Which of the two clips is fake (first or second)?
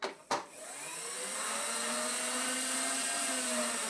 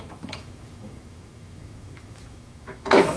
second